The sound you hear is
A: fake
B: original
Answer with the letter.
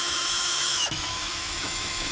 A